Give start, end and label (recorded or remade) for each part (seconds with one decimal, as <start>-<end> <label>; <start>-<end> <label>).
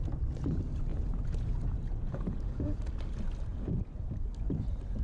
0.0-0.9 recorded; 0.9-2.8 remade; 2.8-3.5 recorded; 3.5-4.1 remade; 4.1-5.0 recorded